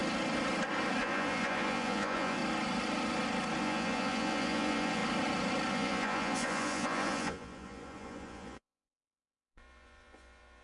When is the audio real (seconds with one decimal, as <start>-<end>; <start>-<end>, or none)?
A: 0.0-1.0; 2.4-3.6; 5.0-5.7